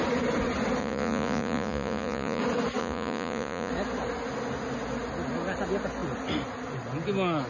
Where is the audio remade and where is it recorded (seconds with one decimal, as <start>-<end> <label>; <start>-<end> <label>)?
0.0-0.8 recorded; 0.8-2.4 remade; 2.4-2.8 recorded; 2.8-3.7 remade; 3.7-7.5 recorded